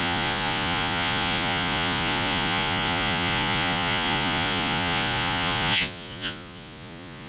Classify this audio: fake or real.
fake